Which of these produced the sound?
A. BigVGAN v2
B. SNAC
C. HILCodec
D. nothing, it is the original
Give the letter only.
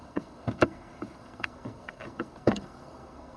B